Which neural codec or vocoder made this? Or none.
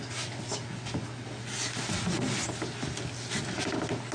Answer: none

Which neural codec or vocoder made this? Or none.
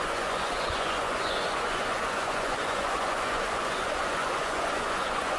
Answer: vocoder, Vocos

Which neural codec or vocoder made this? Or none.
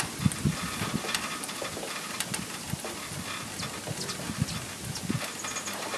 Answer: none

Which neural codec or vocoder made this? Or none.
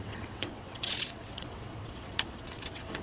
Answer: vocoder, WaveNeXt